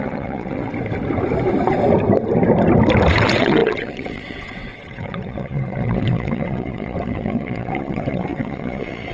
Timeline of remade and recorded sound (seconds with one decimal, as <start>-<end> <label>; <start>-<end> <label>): 0.0-0.7 remade; 0.7-3.1 recorded; 3.1-9.1 remade